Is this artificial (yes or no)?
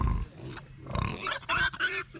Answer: no